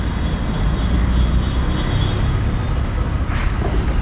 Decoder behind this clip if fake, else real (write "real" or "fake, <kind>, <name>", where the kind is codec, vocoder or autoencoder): real